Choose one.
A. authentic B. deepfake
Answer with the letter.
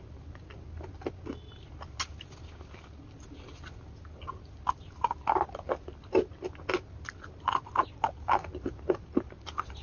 A